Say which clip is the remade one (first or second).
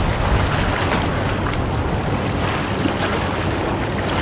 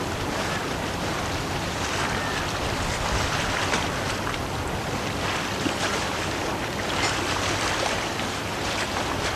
second